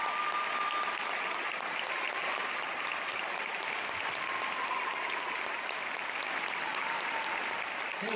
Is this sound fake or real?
real